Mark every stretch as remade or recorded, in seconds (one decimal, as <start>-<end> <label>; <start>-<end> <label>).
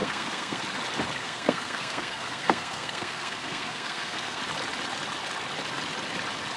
0.0-0.6 remade; 0.6-1.2 recorded; 1.2-4.4 remade; 4.4-6.6 recorded